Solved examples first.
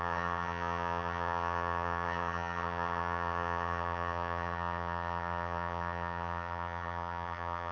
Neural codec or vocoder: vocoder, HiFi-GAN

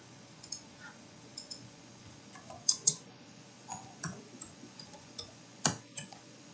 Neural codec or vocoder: vocoder, Vocos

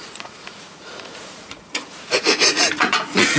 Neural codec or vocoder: vocoder, Vocos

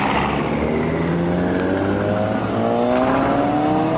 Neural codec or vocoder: none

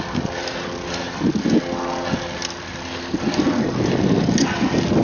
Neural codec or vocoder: none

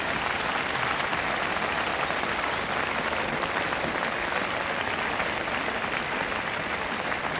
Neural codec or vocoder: none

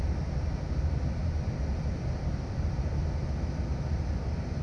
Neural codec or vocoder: none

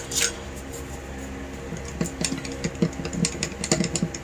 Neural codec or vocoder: none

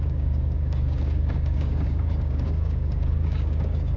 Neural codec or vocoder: codec, DAC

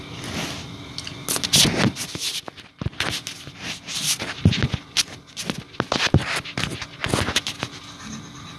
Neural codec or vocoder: none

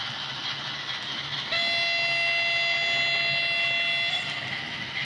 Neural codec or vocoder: none